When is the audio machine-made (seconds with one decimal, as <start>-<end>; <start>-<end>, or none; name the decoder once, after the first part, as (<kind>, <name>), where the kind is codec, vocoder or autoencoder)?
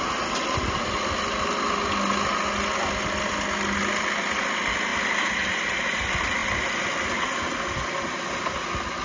none